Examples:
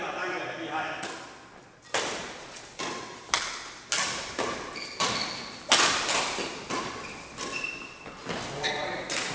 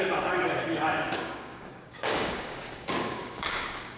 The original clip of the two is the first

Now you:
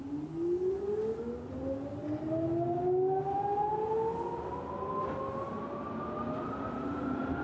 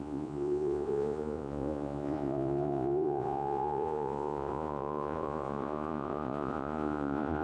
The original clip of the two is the first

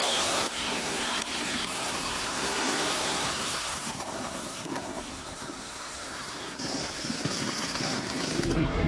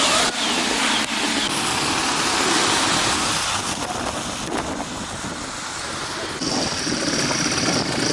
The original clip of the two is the second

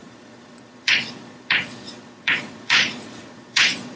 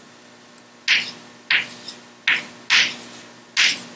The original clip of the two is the second